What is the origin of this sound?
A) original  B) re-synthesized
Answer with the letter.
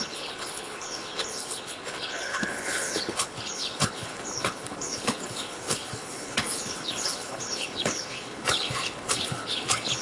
B